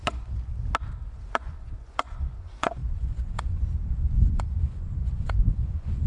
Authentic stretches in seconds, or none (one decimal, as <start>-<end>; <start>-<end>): 0.5-1.1